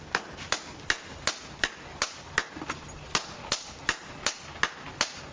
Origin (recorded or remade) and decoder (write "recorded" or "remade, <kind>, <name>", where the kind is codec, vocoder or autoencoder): recorded